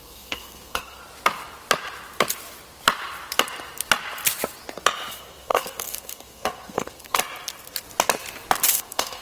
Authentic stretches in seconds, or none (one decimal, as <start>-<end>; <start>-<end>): 1.0-5.1; 7.2-8.7